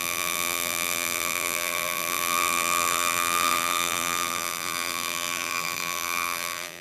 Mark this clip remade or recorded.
remade